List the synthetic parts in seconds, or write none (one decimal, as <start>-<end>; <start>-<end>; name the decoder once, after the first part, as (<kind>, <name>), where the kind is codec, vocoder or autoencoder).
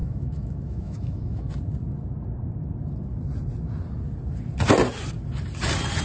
0.0-1.5 (autoencoder, DAC-VAE)